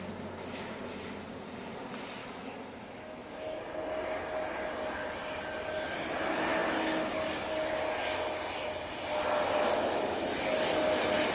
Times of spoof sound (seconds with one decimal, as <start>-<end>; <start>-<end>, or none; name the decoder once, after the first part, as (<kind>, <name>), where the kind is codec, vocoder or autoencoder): 2.2-3.6 (autoencoder, DAC-VAE)